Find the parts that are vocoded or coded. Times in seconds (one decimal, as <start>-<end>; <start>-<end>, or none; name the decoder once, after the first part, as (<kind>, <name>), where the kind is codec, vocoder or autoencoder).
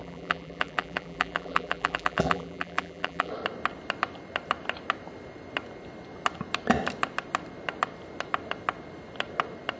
0.0-3.3 (vocoder, BigVGAN v2)